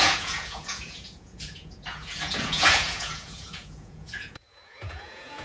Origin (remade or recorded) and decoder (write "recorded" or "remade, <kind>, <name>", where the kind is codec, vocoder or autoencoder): remade, vocoder, Vocos